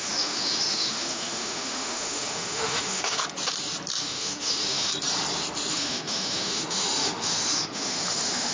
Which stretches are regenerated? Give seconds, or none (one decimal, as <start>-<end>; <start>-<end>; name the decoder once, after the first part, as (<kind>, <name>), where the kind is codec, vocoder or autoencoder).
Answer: 0.0-3.2 (autoencoder, DAC-VAE); 4.0-4.9; 5.7-8.5